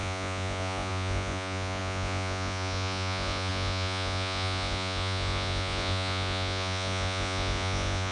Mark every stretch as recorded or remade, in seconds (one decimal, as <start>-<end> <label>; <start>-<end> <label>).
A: 0.0-8.1 remade